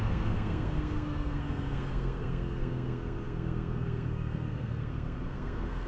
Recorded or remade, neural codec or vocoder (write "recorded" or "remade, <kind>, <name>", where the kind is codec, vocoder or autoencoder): remade, codec, SNAC